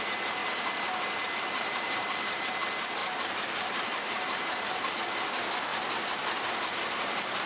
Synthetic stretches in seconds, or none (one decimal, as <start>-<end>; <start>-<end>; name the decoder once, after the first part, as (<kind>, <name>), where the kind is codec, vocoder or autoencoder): 0.4-2.4 (vocoder, BigVGAN v2); 3.0-4.9; 5.7-7.5